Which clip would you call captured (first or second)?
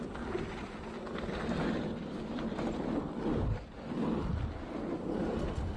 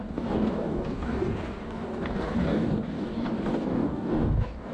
first